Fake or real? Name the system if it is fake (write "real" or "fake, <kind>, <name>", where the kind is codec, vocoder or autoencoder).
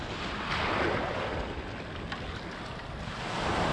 real